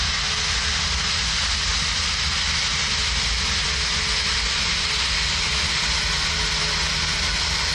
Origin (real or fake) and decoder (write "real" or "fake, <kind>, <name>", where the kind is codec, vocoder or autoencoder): real